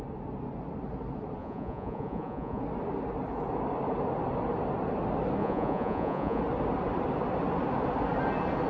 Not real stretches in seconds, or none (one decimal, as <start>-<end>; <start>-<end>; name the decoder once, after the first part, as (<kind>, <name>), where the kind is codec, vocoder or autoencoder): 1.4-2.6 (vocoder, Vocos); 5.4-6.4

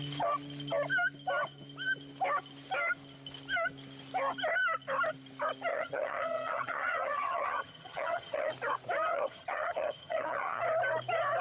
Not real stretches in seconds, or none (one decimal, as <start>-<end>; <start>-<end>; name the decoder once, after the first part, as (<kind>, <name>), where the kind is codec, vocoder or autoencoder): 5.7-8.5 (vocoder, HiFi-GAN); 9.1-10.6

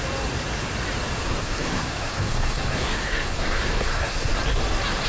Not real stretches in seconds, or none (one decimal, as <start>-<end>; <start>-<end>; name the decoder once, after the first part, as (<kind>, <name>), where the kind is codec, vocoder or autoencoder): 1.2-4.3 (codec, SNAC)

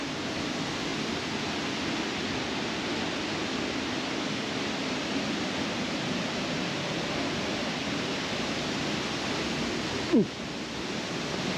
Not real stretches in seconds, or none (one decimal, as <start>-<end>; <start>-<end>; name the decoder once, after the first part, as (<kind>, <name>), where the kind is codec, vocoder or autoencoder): none

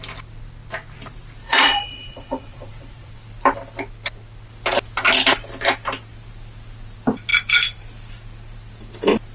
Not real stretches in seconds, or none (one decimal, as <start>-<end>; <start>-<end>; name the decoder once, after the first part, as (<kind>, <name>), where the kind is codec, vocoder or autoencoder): 1.4-3.1 (vocoder, Vocos)

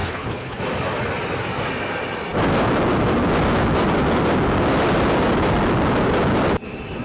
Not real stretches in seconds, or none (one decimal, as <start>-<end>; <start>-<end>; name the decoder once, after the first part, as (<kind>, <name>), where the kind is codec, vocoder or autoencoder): 0.0-0.6 (codec, HILCodec)

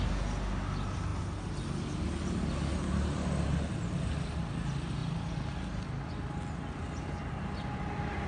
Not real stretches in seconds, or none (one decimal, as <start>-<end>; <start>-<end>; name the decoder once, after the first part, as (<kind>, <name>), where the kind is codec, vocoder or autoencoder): none

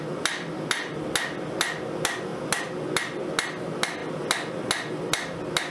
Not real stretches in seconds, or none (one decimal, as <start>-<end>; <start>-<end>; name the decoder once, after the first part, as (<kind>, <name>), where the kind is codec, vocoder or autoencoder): none